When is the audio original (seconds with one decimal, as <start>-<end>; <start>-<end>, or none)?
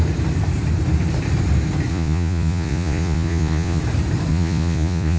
0.0-1.9; 3.8-4.3